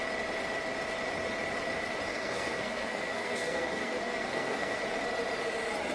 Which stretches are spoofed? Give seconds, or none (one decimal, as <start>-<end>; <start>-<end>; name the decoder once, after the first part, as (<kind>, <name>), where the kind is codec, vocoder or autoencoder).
2.1-4.8 (codec, SNAC)